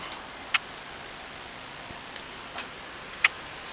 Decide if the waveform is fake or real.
real